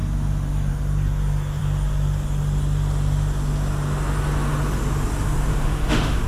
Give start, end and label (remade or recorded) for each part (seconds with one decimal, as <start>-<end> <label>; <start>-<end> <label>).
0.0-5.5 recorded; 5.5-6.3 remade